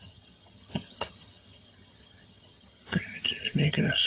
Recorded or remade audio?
remade